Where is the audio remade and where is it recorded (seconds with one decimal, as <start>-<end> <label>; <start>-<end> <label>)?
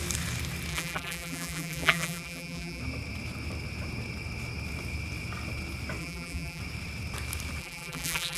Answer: 0.0-0.7 recorded; 0.7-2.8 remade; 2.8-6.0 recorded; 6.0-6.6 remade; 6.6-7.6 recorded; 7.6-8.4 remade